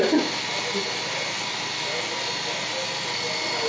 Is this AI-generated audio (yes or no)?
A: no